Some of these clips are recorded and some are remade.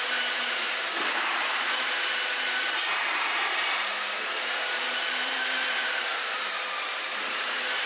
remade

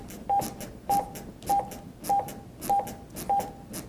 recorded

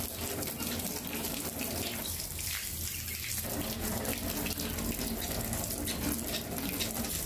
recorded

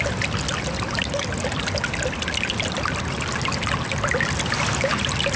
recorded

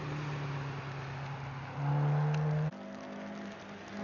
recorded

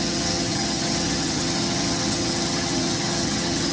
remade